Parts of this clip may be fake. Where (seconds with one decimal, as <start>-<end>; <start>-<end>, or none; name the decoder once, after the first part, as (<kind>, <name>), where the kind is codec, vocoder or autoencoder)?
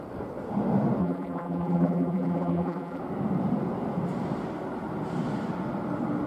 1.0-3.0 (vocoder, BigVGAN v2)